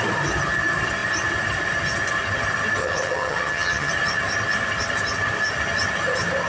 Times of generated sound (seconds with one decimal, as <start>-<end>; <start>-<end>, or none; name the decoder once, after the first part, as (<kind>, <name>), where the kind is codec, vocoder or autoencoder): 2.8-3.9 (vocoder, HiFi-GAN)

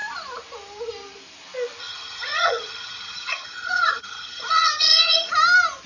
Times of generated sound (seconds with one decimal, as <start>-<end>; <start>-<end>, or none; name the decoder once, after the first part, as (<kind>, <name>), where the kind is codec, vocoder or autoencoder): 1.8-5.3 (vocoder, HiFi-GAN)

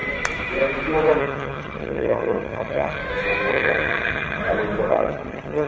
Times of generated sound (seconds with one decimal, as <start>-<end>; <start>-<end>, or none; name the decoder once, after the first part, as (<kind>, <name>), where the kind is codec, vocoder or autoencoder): 1.2-3.0 (vocoder, HiFi-GAN); 3.5-4.4; 4.9-5.7